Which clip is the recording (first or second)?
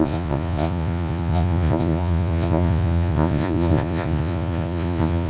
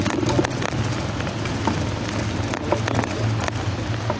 second